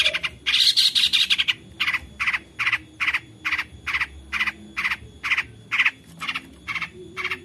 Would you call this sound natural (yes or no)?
yes